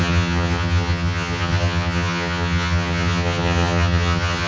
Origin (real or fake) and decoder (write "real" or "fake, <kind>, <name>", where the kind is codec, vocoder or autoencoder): fake, vocoder, HiFi-GAN